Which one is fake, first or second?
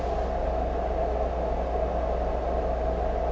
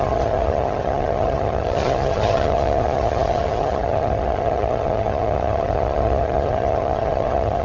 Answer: second